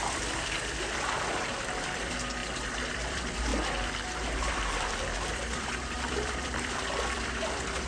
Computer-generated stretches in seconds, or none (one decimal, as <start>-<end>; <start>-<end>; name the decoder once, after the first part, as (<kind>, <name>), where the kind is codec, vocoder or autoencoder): 0.0-2.4 (vocoder, BigVGAN v2); 2.9-3.5; 4.5-7.9